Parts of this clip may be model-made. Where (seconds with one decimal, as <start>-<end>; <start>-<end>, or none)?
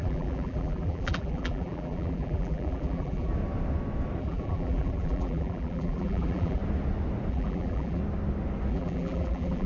0.0-3.3; 4.2-6.6; 7.3-8.0; 8.7-9.7